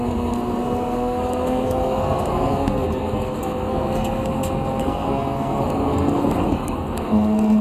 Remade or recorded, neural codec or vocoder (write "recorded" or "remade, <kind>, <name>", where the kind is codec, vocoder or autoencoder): remade, codec, SNAC